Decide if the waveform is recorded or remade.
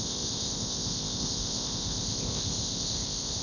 remade